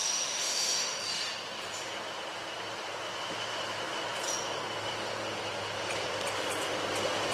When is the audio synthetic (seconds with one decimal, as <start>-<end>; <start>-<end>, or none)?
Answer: 0.0-1.0